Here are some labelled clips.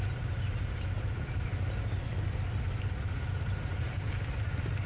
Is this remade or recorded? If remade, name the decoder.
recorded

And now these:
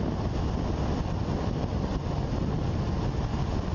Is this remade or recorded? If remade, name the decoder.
recorded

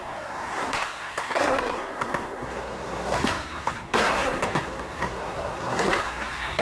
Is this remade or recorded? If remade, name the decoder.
remade, codec, SNAC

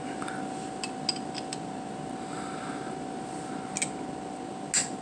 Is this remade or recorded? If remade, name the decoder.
recorded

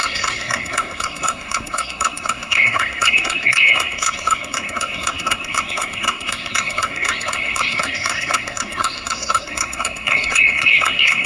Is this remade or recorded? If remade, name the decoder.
remade, codec, SNAC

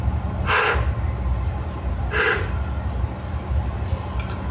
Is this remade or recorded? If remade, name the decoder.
recorded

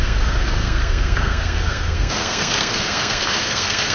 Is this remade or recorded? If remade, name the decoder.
remade, codec, SNAC